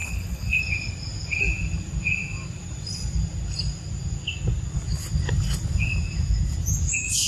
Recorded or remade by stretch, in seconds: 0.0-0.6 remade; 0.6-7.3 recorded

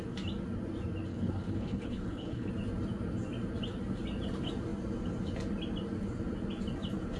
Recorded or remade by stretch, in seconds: 0.0-1.1 recorded; 1.1-2.5 remade; 2.5-7.2 recorded